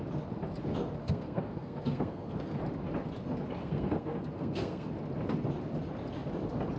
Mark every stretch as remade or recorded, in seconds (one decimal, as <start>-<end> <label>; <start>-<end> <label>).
0.0-1.0 recorded; 1.0-2.6 remade; 2.6-3.6 recorded; 3.6-4.9 remade; 4.9-6.8 recorded